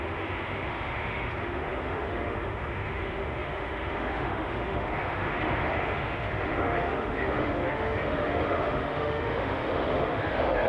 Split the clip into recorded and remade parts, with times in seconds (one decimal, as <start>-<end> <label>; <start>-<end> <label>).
0.0-10.7 remade